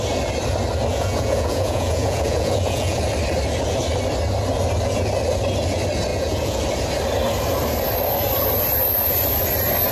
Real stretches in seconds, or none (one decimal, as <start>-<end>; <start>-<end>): 0.0-0.9; 3.0-6.1; 6.6-9.9